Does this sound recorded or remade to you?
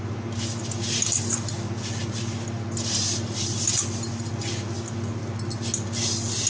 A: recorded